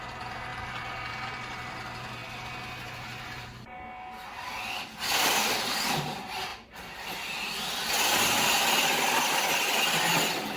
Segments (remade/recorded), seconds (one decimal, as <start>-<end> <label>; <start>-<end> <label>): 0.0-10.6 recorded

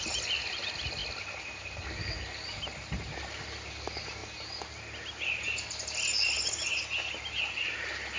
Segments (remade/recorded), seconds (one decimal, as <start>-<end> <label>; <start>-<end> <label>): 0.0-1.0 remade; 1.0-2.2 recorded; 2.2-4.2 remade; 4.2-7.3 recorded; 7.3-8.2 remade

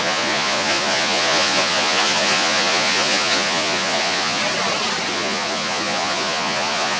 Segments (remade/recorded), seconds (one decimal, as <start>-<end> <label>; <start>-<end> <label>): 0.0-4.4 remade; 4.4-5.1 recorded; 5.1-7.0 remade

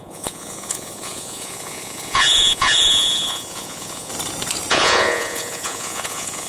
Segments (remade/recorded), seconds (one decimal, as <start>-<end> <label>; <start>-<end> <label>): 0.0-4.1 remade; 4.1-4.7 recorded; 4.7-6.5 remade

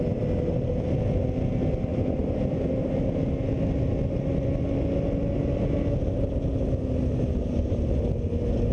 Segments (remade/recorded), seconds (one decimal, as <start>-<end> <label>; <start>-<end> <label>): 0.0-8.7 recorded

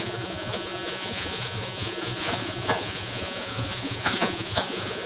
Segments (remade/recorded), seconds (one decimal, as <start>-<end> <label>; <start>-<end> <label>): 0.0-5.1 remade